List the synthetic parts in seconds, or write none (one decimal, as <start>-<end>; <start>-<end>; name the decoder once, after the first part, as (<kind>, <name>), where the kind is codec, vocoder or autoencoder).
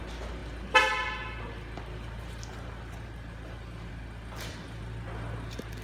none